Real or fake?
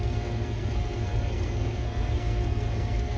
fake